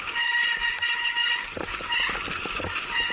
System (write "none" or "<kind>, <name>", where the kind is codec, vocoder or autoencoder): none